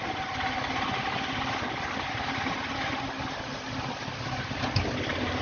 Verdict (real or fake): real